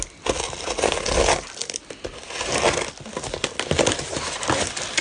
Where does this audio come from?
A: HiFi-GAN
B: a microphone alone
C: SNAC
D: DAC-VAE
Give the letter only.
B